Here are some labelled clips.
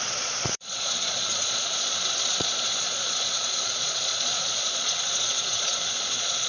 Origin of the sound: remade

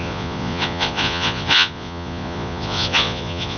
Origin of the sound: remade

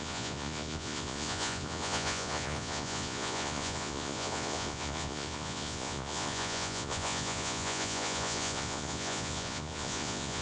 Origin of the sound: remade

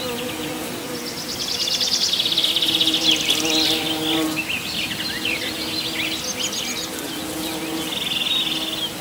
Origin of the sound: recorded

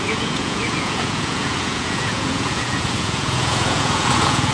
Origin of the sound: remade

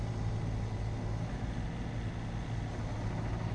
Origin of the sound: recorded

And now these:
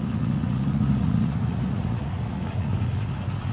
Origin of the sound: remade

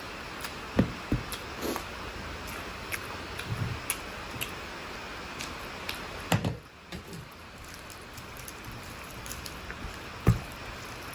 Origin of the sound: recorded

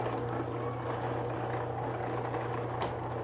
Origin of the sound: recorded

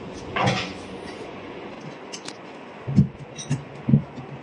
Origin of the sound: remade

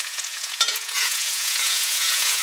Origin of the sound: remade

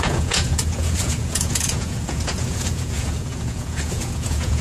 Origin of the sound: remade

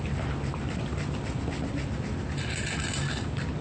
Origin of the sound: recorded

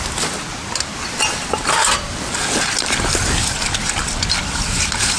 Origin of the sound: recorded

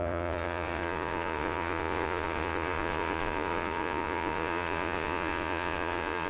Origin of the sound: remade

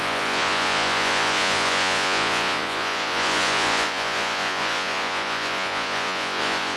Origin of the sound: remade